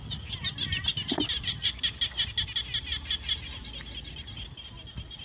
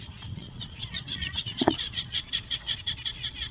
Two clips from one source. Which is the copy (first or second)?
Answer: second